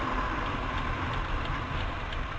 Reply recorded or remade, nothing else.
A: remade